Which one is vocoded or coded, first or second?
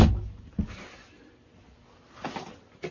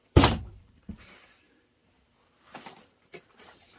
second